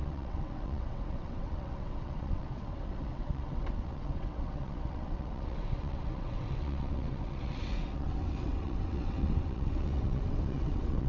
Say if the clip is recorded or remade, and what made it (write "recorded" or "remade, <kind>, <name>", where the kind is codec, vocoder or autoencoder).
remade, vocoder, WaveNeXt